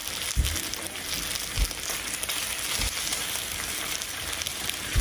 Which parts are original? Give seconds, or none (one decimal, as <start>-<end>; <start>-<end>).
0.0-4.5